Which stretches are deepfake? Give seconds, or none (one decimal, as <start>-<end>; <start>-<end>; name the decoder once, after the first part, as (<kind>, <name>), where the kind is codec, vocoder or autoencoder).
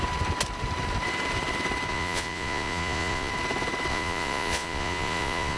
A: 1.9-3.3 (vocoder, Vocos); 3.9-5.6